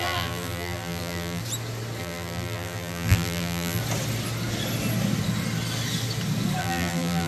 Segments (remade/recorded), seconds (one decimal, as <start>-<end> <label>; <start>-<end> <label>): 0.0-1.4 remade; 1.4-2.0 recorded; 2.0-3.8 remade; 3.8-6.6 recorded; 6.6-7.3 remade